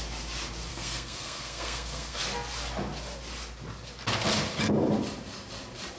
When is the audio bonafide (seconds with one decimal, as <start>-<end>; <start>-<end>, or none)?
0.0-0.7; 2.2-6.0